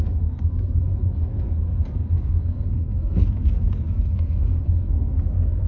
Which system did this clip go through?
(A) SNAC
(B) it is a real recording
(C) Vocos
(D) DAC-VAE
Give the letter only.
A